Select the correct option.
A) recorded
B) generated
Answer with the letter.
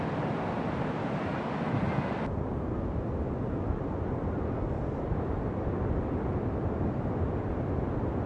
A